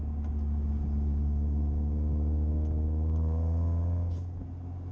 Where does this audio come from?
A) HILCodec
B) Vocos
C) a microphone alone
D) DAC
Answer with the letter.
C